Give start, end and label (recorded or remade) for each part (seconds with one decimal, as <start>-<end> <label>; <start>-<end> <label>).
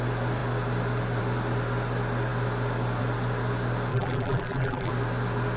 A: 0.0-3.9 recorded; 3.9-4.9 remade; 4.9-5.6 recorded